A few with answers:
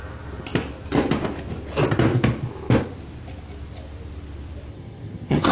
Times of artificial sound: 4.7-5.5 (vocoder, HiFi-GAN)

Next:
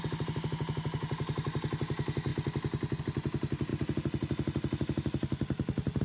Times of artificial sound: none

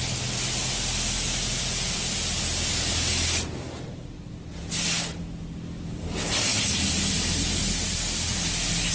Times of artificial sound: none